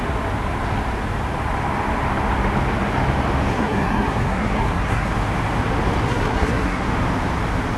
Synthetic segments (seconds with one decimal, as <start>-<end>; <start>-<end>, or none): 3.5-5.1; 6.1-6.9